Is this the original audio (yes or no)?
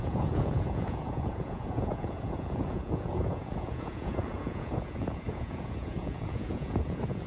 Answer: no